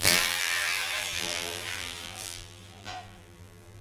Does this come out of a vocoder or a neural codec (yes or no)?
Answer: yes